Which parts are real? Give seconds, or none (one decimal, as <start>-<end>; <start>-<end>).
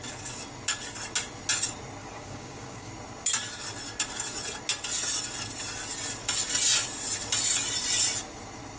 0.0-2.0; 2.9-8.8